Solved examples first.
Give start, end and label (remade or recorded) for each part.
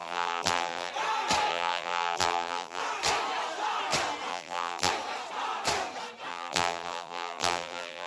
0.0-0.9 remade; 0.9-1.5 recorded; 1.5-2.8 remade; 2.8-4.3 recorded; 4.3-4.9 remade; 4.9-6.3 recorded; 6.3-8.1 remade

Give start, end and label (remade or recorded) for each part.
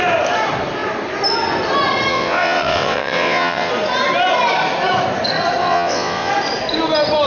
0.0-2.1 recorded; 2.1-3.7 remade; 3.7-5.6 recorded; 5.6-6.3 remade; 6.3-7.3 recorded